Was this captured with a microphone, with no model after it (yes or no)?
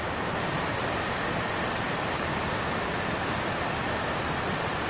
no